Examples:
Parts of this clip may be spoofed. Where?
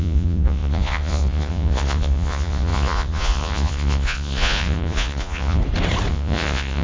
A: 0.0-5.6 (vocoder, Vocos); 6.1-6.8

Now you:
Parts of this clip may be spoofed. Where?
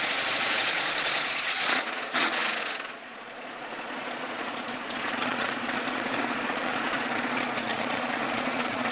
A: 0.0-8.9 (vocoder, Vocos)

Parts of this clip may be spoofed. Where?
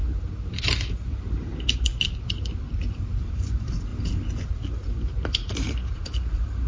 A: 0.9-1.9 (vocoder, BigVGAN v2); 3.2-3.9; 4.5-6.7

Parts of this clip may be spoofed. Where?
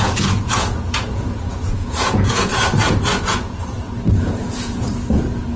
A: 0.0-2.5 (vocoder, Vocos); 3.2-4.9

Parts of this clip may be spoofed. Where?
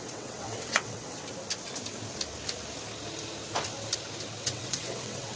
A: 0.0-1.2 (vocoder, WaveNeXt); 4.4-5.4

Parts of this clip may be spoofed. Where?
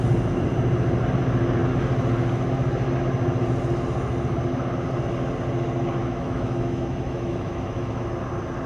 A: 6.0-8.0 (autoencoder, DAC-VAE)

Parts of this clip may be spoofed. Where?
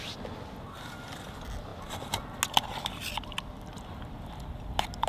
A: none